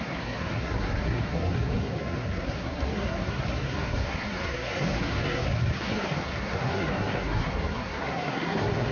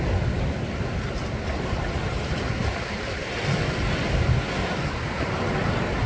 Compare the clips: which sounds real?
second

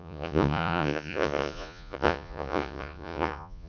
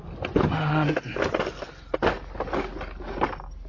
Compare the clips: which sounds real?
second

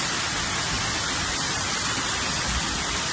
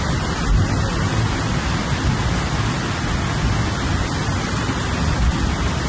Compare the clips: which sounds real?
second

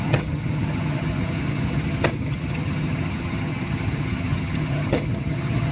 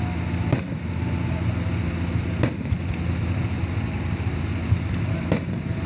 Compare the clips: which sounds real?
second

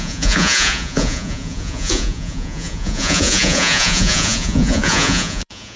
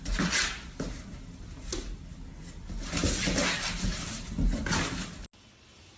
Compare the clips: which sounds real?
second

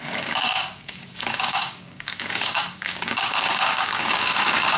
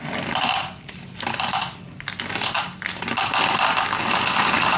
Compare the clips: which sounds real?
second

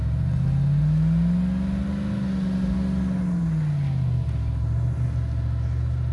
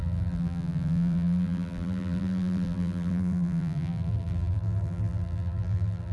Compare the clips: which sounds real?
first